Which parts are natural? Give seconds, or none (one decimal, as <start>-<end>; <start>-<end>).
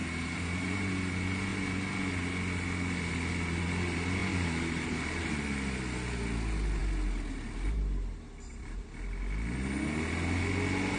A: 0.9-4.2; 5.3-11.0